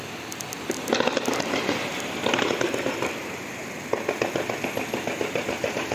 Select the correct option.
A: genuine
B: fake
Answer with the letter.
A